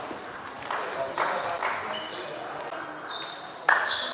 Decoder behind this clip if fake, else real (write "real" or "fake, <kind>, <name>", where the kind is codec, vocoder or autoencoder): real